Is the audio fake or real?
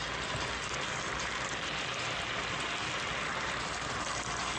real